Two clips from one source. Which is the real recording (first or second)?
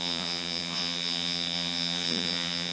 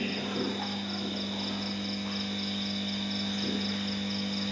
second